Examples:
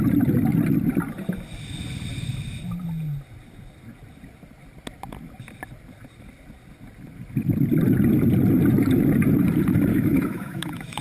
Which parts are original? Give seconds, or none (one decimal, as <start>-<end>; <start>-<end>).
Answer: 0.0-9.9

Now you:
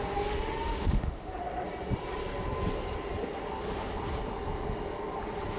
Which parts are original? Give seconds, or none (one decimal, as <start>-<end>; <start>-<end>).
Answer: 0.0-0.7; 1.4-5.6

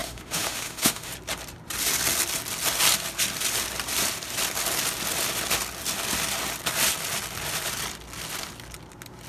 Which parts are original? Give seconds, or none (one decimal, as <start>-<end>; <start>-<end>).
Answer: 1.1-9.3

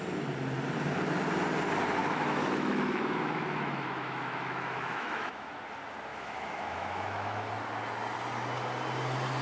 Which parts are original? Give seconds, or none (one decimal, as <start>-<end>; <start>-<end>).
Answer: 0.0-2.0; 5.5-6.1; 7.5-9.4

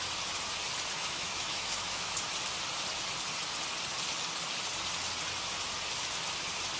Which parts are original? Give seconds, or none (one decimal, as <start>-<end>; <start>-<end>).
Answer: 0.0-0.9; 2.1-6.8